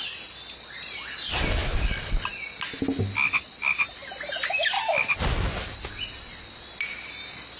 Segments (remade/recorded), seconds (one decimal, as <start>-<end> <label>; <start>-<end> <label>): 0.0-7.6 recorded